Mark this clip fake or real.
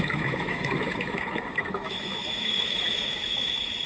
fake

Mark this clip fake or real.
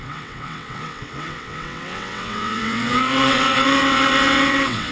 fake